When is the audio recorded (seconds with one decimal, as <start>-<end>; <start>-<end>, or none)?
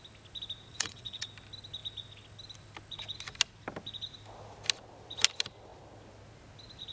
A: 0.0-0.7; 1.3-6.9